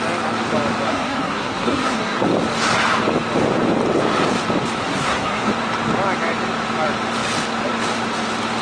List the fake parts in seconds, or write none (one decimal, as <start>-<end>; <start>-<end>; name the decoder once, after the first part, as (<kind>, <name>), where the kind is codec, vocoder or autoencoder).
0.9-2.2 (codec, SNAC); 4.8-5.5